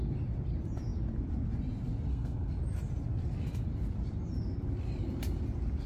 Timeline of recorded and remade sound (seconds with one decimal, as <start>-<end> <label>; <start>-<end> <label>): 0.0-2.1 recorded; 2.1-2.6 remade; 2.6-5.9 recorded

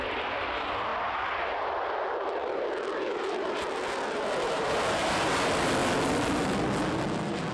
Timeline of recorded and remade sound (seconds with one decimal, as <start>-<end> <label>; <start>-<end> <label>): 0.0-7.5 recorded

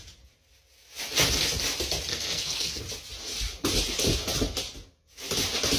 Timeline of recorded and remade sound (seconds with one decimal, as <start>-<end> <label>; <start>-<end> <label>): 0.0-2.1 recorded; 2.1-2.8 remade; 2.8-5.8 recorded

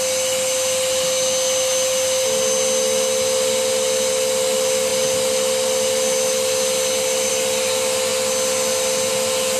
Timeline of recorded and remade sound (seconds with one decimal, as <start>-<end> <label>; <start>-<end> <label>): 0.0-9.6 recorded

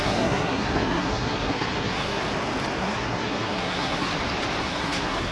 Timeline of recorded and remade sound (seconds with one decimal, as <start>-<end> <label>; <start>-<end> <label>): 0.0-2.2 remade; 2.2-2.8 recorded; 2.8-4.1 remade; 4.1-4.6 recorded; 4.6-5.3 remade

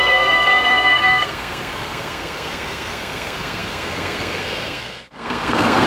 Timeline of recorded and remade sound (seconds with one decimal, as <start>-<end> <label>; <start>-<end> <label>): 0.0-5.9 remade

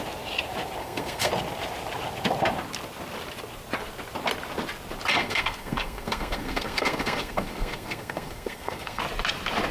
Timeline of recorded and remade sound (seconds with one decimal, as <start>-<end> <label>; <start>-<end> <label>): 0.0-0.8 recorded; 0.8-1.3 remade; 1.3-5.2 recorded; 5.2-9.0 remade; 9.0-9.7 recorded

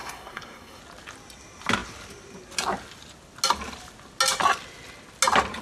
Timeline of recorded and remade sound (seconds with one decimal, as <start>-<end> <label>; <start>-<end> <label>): 0.0-0.8 remade; 0.8-5.6 recorded